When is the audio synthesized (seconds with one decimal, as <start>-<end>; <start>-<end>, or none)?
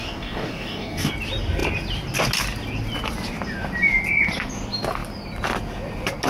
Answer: 0.0-1.1